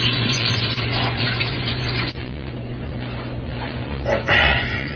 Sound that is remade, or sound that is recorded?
remade